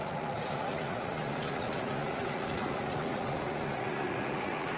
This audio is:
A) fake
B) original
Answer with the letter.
A